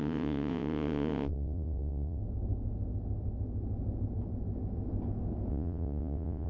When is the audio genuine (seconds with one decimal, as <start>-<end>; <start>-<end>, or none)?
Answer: 2.2-5.5